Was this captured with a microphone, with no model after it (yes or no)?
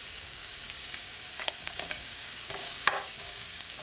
no